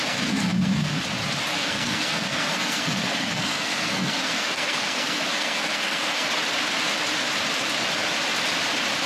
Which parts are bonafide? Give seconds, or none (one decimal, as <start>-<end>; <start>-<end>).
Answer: 1.0-1.5; 6.3-9.1